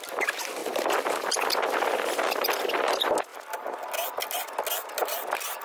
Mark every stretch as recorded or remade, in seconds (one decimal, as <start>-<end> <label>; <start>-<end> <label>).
0.0-5.6 recorded